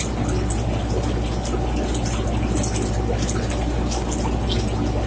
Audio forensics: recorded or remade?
recorded